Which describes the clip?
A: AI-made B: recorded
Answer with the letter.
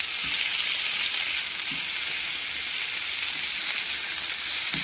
B